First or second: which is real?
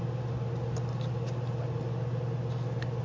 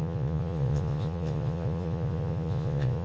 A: first